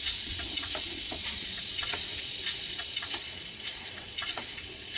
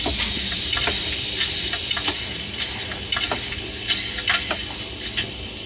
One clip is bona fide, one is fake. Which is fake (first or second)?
first